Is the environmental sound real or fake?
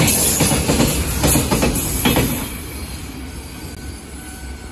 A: real